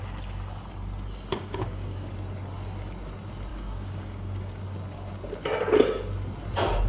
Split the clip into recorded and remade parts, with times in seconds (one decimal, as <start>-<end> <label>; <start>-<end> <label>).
0.0-1.3 recorded; 1.3-2.1 remade; 2.1-3.5 recorded; 3.5-4.6 remade; 4.6-6.9 recorded